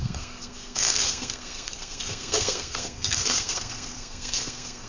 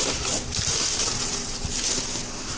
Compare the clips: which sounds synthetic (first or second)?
first